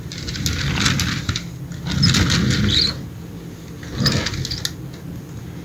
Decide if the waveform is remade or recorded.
recorded